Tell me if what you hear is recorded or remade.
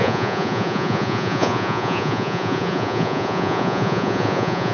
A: remade